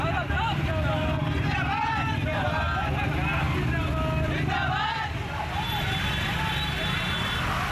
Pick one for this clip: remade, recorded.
recorded